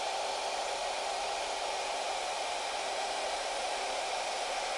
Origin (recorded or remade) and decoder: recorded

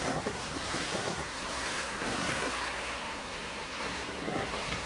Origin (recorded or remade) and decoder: remade, codec, SNAC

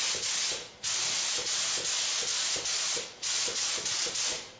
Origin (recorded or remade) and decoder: recorded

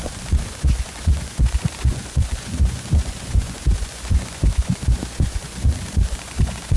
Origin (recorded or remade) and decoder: remade, vocoder, Vocos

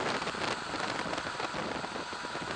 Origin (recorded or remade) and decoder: recorded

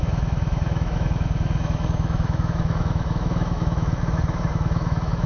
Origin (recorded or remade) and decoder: remade, autoencoder, DAC-VAE